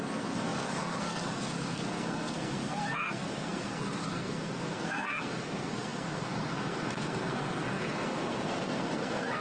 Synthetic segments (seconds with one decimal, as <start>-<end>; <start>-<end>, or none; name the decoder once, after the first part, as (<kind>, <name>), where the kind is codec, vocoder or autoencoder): 0.0-9.4 (codec, SNAC)